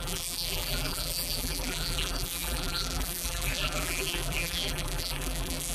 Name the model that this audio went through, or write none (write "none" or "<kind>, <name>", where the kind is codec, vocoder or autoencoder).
vocoder, BigVGAN v2